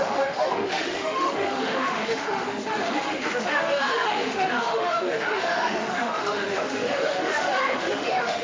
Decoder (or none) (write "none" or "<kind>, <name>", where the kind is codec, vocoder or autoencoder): autoencoder, DAC-VAE